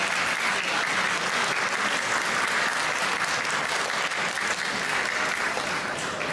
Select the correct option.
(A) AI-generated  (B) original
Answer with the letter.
B